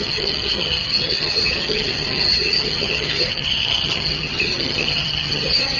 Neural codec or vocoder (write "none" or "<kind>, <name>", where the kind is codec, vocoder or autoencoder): vocoder, HiFi-GAN